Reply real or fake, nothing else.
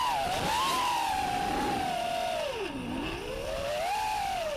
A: real